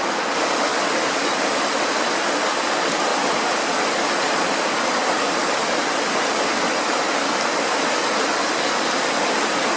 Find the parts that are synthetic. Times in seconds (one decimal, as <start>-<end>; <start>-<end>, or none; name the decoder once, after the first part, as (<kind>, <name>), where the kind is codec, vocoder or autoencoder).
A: none